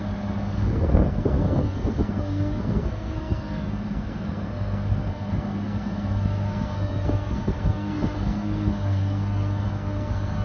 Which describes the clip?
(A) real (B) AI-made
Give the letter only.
B